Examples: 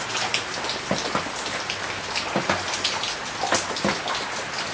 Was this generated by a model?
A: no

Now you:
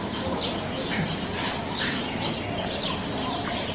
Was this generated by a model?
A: no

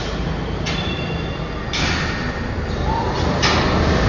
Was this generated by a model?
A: no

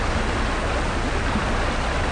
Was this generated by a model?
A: no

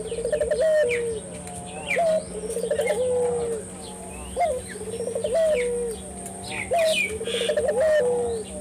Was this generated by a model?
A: no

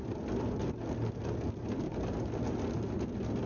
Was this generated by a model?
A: no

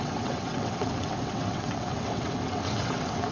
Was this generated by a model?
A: yes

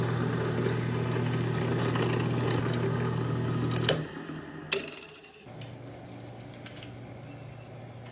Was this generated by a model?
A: no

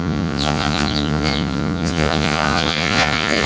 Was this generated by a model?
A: yes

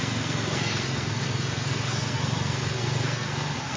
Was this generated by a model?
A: yes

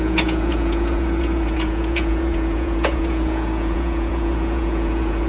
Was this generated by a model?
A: yes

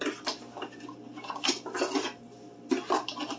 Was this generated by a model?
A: no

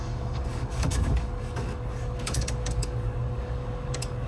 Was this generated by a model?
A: yes